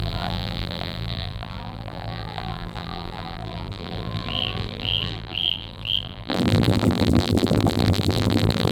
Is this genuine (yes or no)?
no